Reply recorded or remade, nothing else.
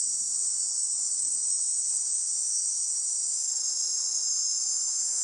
remade